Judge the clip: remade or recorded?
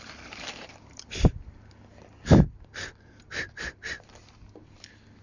remade